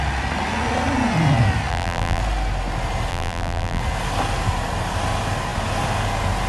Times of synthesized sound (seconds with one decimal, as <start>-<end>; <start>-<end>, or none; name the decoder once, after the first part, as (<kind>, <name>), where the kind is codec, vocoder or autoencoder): 1.7-2.2 (vocoder, BigVGAN v2); 3.1-3.8